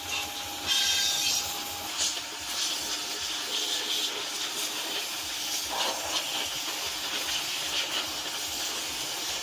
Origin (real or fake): real